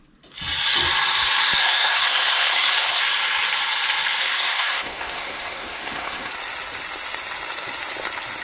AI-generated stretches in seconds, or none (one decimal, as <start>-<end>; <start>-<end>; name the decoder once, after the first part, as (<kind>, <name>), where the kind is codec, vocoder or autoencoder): 1.6-3.0 (codec, SNAC); 4.2-6.3